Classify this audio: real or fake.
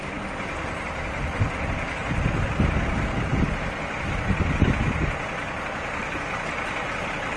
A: real